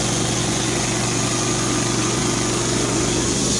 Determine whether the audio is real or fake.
fake